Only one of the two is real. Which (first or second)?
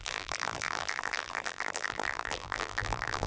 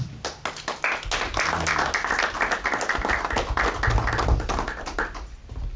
second